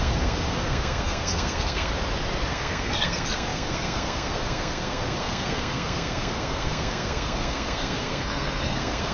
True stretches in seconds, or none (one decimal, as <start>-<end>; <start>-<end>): 1.9-2.5